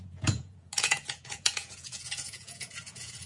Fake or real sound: fake